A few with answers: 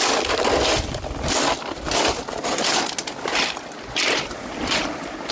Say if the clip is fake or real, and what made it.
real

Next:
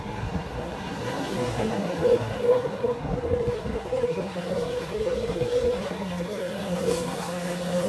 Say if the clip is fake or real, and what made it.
fake, codec, SNAC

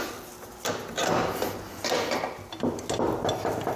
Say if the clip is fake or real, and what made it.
real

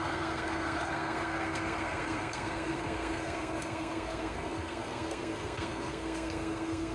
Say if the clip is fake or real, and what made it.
fake, codec, SNAC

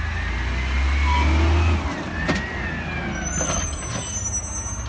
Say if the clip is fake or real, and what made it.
real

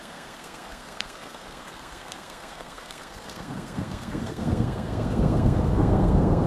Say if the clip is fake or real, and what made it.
fake, codec, SNAC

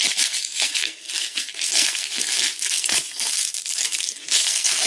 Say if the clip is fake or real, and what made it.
fake, codec, SNAC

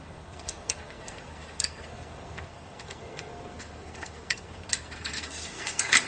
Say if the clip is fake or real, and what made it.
fake, codec, SNAC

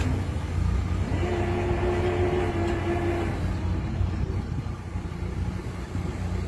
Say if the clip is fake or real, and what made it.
real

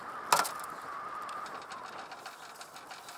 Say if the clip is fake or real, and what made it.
real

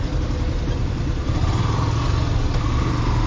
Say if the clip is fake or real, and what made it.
real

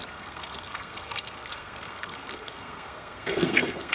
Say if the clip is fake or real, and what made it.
fake, codec, SNAC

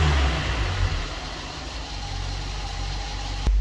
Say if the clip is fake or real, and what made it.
real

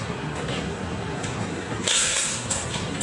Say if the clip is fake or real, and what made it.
fake, codec, SNAC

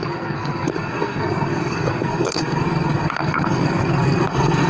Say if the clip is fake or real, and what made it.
fake, codec, SNAC